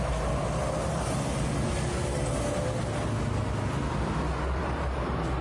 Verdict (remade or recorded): recorded